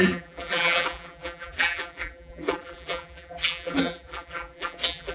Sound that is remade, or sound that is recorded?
remade